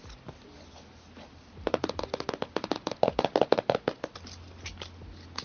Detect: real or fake real